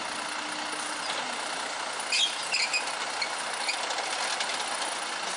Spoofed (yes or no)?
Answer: no